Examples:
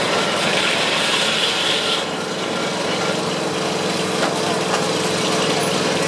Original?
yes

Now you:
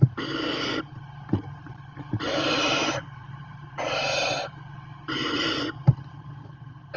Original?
no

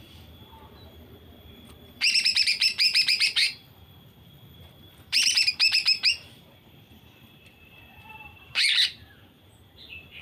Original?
no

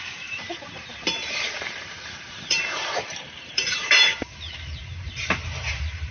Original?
no